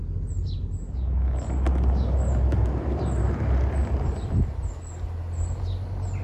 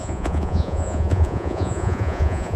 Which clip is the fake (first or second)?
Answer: second